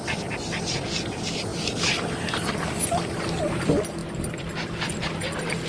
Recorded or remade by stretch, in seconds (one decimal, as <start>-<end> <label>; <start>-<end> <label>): 0.0-5.7 recorded